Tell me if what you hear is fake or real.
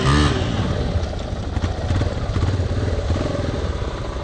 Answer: real